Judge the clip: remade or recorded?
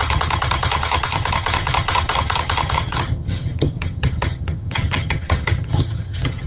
remade